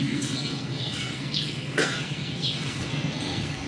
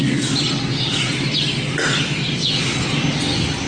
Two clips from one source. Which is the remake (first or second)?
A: first